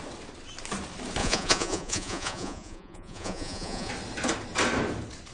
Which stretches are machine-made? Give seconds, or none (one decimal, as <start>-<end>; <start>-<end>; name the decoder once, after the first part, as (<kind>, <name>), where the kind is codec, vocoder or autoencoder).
1.2-3.9 (vocoder, Vocos)